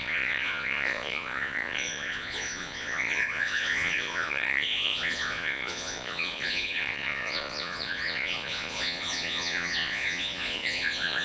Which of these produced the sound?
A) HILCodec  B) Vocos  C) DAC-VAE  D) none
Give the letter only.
B